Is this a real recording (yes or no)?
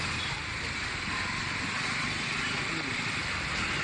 yes